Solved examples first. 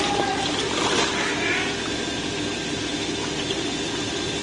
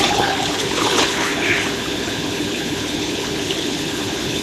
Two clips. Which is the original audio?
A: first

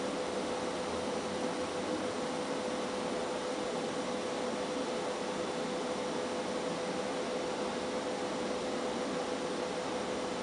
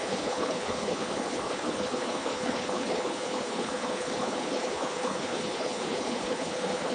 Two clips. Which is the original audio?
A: first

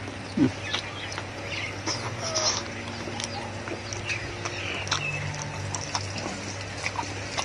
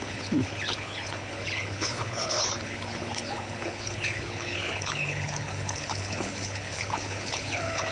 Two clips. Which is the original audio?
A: first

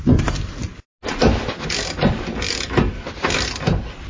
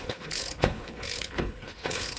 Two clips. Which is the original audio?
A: first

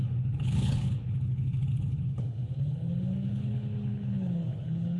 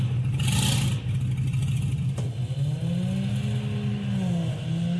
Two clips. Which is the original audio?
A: second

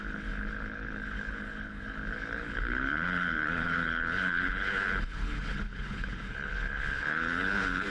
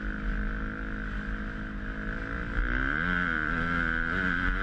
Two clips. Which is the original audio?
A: second